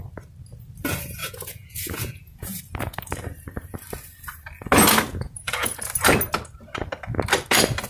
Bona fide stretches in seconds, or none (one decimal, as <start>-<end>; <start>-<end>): 0.0-1.2; 2.6-5.1; 5.8-7.9